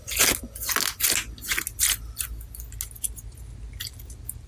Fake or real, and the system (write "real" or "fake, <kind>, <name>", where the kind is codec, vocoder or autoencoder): real